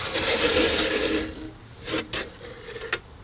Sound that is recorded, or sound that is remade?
recorded